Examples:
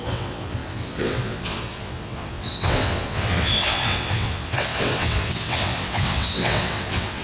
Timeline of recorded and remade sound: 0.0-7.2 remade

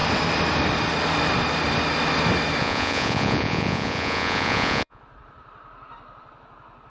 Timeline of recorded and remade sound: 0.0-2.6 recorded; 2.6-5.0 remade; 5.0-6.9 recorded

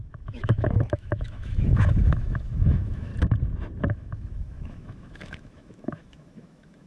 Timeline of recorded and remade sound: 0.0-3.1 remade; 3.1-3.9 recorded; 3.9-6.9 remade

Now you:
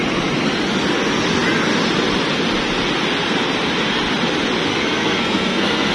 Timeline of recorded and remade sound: 0.0-4.7 recorded; 4.7-5.9 remade